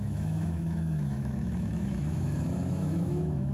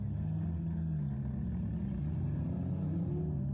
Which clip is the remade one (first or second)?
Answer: first